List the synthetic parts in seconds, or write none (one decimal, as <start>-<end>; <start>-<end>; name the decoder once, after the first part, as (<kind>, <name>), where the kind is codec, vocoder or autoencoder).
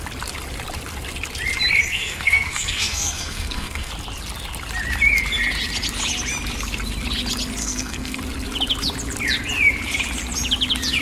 1.9-3.9 (codec, SNAC); 7.6-8.2